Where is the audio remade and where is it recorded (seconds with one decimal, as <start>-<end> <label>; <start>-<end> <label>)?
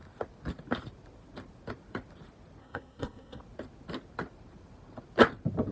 0.0-2.6 recorded; 2.6-3.4 remade; 3.4-5.7 recorded